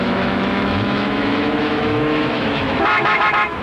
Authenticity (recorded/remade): remade